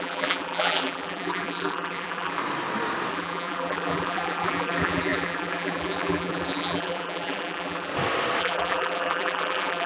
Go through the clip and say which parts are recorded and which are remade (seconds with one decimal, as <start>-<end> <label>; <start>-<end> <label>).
0.0-2.4 remade; 2.4-3.1 recorded; 3.1-7.9 remade; 7.9-8.4 recorded; 8.4-9.9 remade